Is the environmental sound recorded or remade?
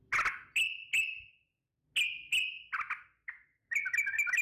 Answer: recorded